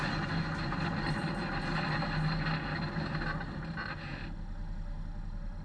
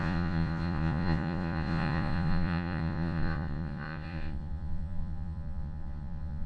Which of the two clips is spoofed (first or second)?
second